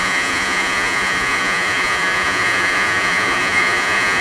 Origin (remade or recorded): remade